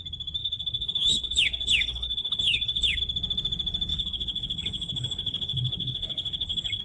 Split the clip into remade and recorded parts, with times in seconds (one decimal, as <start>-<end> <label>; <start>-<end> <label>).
0.0-0.4 recorded; 0.4-3.0 remade; 3.0-3.9 recorded; 3.9-6.8 remade